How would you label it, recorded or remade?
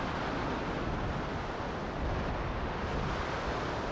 recorded